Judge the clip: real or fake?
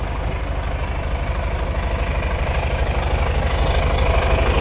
real